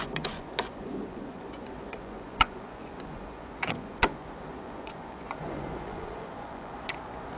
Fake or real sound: fake